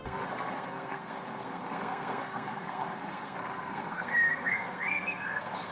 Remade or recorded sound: remade